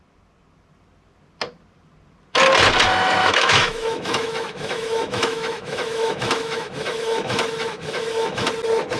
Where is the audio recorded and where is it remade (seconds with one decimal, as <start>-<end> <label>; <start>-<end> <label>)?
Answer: 0.0-3.2 recorded; 3.2-8.5 remade; 8.5-9.0 recorded